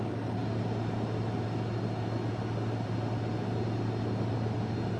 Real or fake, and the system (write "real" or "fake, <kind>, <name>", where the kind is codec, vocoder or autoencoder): real